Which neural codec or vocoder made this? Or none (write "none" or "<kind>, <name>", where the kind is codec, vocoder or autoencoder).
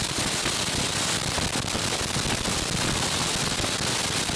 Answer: none